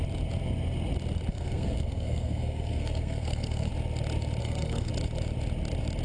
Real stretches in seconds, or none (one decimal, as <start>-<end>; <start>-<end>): 0.0-1.3; 3.7-4.4; 4.9-6.0